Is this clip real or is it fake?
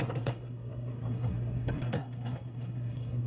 fake